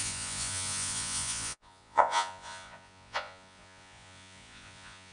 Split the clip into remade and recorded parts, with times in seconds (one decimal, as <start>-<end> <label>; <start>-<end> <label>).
0.0-5.1 remade